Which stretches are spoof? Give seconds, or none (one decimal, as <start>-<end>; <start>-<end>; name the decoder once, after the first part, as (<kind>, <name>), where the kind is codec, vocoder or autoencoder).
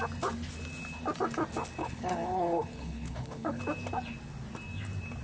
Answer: 1.8-3.6 (codec, HILCodec)